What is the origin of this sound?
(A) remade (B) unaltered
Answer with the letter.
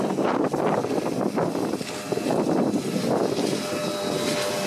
B